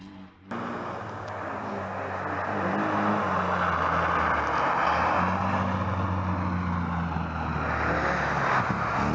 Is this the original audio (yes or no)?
yes